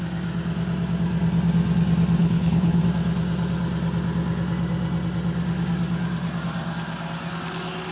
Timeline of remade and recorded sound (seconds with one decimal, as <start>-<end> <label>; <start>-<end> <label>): 0.0-2.2 recorded; 2.2-2.8 remade; 2.8-7.9 recorded